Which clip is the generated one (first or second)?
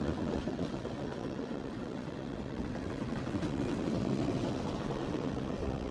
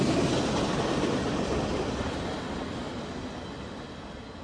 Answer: first